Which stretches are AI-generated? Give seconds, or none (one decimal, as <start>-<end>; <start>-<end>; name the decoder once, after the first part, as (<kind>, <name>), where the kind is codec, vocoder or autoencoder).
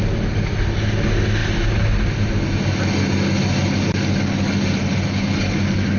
none